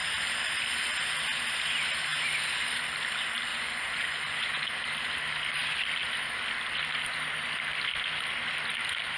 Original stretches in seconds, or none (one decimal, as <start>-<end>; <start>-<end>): 0.0-3.5; 4.6-9.2